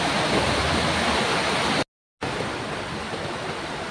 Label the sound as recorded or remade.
recorded